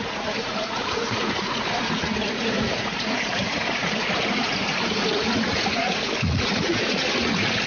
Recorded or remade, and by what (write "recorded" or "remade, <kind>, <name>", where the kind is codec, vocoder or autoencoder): remade, vocoder, Vocos